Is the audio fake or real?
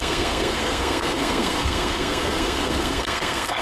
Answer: fake